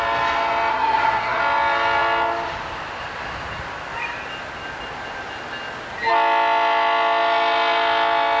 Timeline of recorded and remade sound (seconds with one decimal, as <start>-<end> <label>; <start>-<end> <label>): 0.0-0.7 recorded; 0.7-1.4 remade; 1.4-8.4 recorded